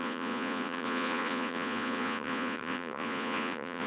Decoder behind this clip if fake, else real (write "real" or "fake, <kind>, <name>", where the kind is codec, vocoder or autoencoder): fake, vocoder, Vocos